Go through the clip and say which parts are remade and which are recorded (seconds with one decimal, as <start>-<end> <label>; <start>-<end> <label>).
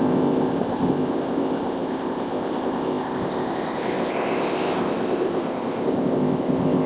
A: 0.0-6.9 remade